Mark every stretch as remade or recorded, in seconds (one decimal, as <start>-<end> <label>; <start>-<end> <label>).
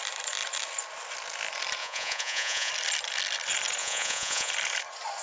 0.0-1.8 recorded; 1.8-2.7 remade; 2.7-3.8 recorded; 3.8-4.5 remade; 4.5-5.2 recorded